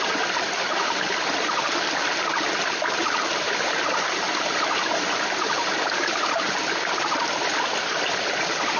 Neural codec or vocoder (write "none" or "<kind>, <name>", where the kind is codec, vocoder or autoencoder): none